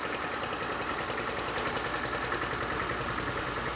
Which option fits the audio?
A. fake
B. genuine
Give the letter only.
B